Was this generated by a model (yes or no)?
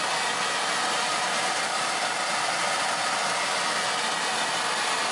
no